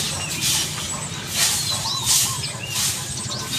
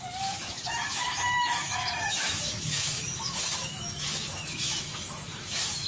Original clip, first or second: first